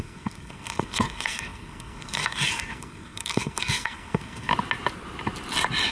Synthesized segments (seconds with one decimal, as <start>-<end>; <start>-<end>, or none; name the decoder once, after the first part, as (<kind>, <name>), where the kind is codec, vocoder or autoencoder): 0.0-4.5 (codec, SNAC)